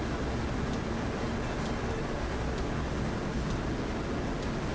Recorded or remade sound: recorded